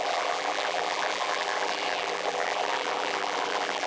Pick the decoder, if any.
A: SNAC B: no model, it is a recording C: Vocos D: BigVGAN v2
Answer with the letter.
D